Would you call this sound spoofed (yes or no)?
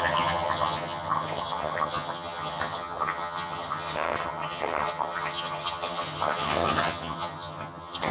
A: yes